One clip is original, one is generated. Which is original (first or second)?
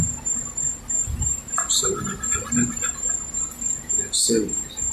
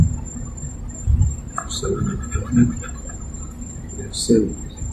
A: first